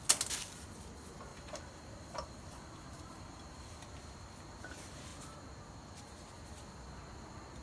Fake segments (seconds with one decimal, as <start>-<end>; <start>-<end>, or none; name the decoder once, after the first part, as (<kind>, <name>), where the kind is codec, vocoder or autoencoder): 1.3-3.8 (vocoder, BigVGAN v2)